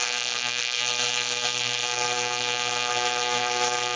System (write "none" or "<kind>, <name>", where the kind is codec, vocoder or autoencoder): codec, SNAC